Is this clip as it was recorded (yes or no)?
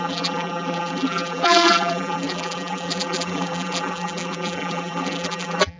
no